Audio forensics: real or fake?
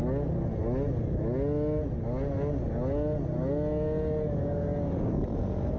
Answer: real